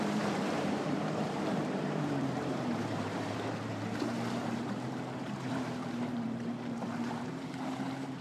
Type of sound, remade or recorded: remade